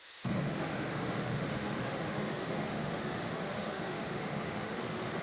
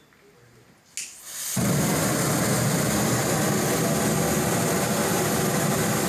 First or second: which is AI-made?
first